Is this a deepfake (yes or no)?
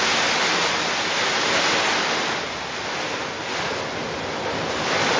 no